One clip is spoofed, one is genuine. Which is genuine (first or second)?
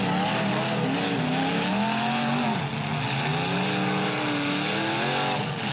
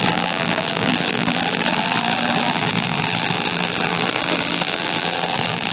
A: first